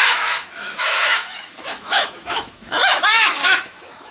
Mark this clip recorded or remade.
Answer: remade